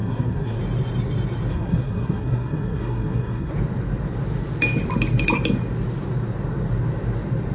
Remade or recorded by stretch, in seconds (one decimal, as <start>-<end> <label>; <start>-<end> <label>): 0.0-0.6 remade; 0.6-1.5 recorded; 1.5-3.5 remade; 3.5-7.5 recorded